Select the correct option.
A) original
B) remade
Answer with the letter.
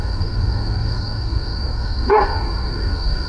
B